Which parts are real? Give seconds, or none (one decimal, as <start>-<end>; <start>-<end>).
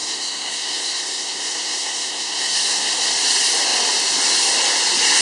3.1-5.2